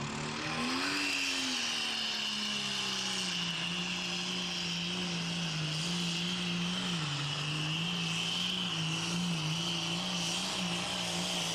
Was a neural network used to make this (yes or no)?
no